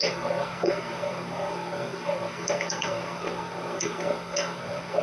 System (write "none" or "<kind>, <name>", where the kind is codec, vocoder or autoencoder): codec, SNAC